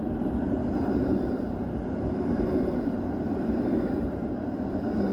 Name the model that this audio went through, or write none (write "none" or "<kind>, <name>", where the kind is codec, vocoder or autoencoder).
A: vocoder, BigVGAN v2